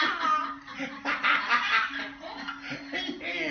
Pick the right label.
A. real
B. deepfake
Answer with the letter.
A